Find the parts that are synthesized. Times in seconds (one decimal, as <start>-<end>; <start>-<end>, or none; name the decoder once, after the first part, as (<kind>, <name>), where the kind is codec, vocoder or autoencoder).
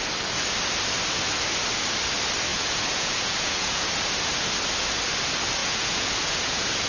2.5-3.9 (vocoder, Vocos); 5.6-6.9